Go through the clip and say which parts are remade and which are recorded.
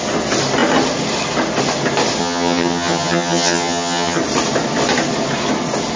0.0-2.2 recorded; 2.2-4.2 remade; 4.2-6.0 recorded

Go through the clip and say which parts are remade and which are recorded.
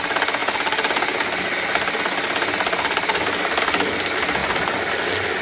0.0-4.4 recorded; 4.4-5.4 remade